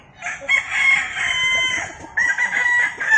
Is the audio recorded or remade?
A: recorded